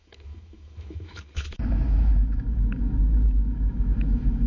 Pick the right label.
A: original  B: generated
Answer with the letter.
B